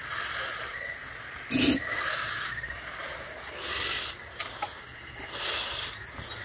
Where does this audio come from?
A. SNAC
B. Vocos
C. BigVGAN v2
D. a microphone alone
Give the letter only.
D